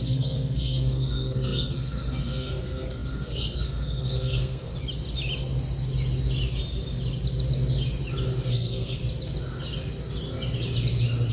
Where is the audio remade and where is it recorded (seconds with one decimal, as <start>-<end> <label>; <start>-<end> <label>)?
0.0-4.7 remade; 4.7-8.5 recorded; 8.5-9.0 remade; 9.0-11.3 recorded